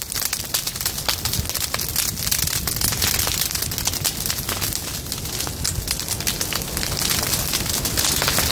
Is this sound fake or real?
real